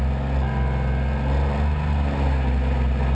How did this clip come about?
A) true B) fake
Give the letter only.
A